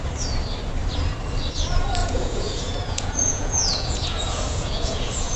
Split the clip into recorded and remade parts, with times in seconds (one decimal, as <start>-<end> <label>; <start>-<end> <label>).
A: 0.0-2.0 recorded; 2.0-5.4 remade